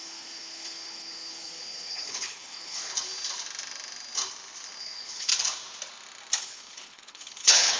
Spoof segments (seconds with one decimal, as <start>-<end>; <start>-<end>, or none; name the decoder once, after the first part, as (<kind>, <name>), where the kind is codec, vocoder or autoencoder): 0.0-2.8 (codec, HILCodec); 4.8-5.3; 6.4-7.8